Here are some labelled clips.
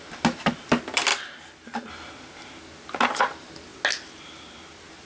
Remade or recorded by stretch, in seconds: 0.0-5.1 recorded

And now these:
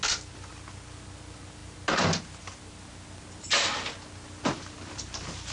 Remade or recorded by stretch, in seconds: 0.0-5.5 recorded

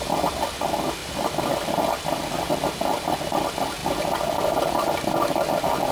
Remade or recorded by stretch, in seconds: 0.0-1.0 recorded; 1.0-2.5 remade; 2.5-3.8 recorded; 3.8-5.5 remade; 5.5-5.9 recorded

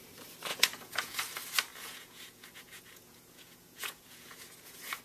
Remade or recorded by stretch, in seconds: 0.0-0.5 recorded; 0.5-1.2 remade; 1.2-1.7 recorded; 1.7-5.0 remade